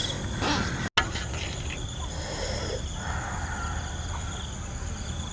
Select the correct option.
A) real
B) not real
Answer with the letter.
A